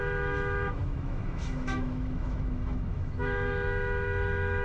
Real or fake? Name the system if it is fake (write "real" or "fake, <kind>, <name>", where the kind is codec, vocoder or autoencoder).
fake, autoencoder, DAC-VAE